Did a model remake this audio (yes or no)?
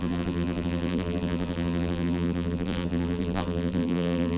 yes